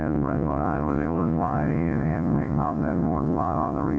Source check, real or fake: fake